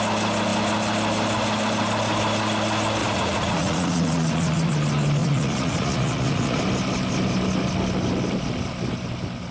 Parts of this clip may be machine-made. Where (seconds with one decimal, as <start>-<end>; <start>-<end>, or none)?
3.0-4.7; 5.2-6.6